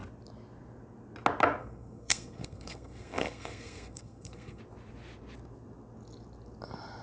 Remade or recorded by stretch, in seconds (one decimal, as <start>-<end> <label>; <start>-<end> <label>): 0.0-1.6 recorded; 1.6-4.6 remade; 4.6-7.0 recorded